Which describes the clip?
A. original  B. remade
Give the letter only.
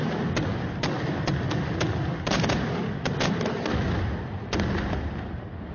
A